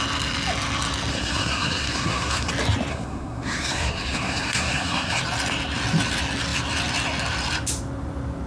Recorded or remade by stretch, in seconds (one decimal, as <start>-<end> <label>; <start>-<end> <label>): 0.0-1.1 recorded; 1.1-2.5 remade; 2.5-2.9 recorded; 2.9-5.2 remade; 5.2-8.5 recorded